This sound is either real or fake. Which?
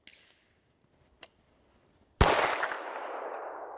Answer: real